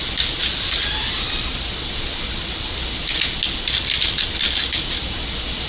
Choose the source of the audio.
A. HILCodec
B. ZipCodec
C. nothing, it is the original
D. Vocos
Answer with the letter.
C